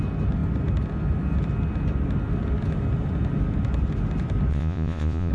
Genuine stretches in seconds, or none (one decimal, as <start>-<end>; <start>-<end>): 0.0-4.5